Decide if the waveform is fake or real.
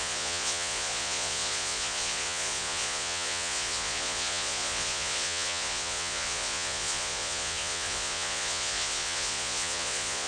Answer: fake